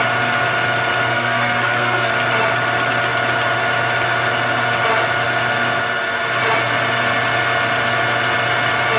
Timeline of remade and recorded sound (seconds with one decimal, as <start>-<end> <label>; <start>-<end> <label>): 0.0-1.1 recorded; 1.1-2.1 remade; 2.1-9.0 recorded